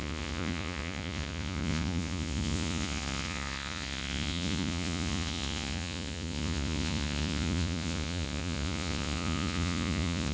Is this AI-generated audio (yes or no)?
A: yes